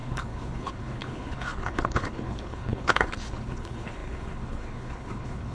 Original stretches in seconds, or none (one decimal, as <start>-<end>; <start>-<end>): none